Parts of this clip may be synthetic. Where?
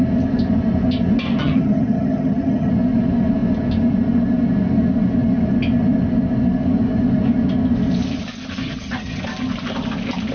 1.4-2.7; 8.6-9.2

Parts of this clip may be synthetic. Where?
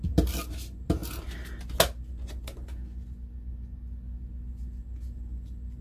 none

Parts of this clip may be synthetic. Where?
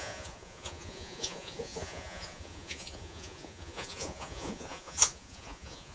0.0-5.9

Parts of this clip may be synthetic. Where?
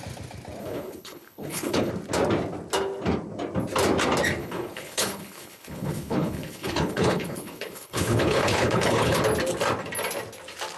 0.6-1.9; 4.4-9.2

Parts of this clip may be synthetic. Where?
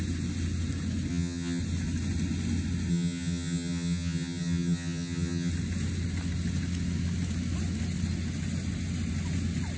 1.1-1.6; 2.9-5.5